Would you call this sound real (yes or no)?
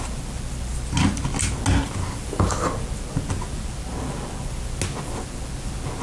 yes